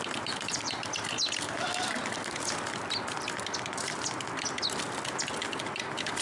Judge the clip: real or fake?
real